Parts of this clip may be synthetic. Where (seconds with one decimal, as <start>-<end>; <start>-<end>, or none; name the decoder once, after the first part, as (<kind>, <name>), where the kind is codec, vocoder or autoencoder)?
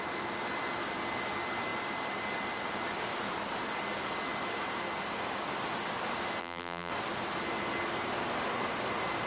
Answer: 6.4-6.9 (vocoder, BigVGAN v2)